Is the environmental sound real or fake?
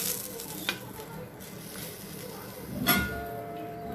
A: real